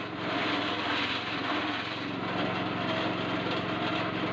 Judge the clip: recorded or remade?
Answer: recorded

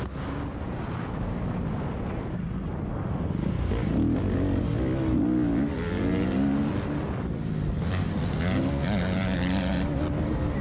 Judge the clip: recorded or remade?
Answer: recorded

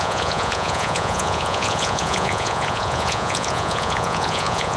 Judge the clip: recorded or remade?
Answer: remade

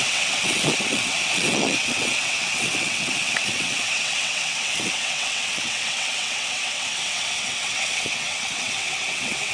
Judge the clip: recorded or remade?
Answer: remade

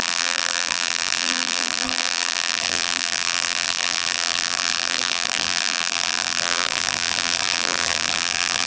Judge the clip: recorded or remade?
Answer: remade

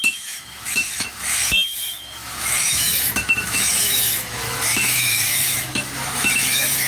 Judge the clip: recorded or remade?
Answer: remade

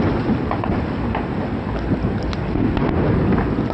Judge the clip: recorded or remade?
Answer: recorded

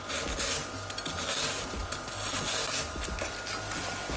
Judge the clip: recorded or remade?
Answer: recorded